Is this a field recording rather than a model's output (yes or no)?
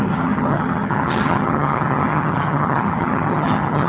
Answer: no